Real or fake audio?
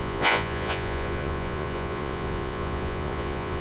fake